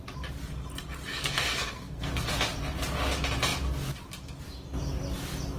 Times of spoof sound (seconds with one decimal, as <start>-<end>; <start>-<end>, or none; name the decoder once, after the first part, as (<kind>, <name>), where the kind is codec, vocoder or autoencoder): 1.1-2.3 (codec, SNAC)